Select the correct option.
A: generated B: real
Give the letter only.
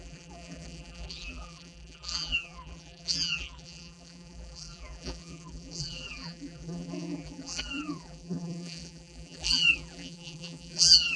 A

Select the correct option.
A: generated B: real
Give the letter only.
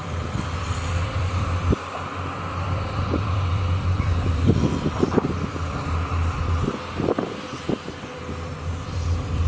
A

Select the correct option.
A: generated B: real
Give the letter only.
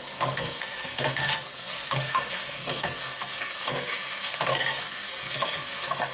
A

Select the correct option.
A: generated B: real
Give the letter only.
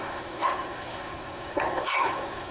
A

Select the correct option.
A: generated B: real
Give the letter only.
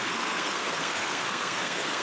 A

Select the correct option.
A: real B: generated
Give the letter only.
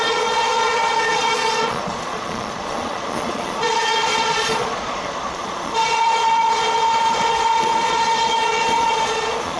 B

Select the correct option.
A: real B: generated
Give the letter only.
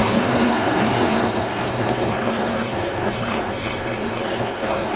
B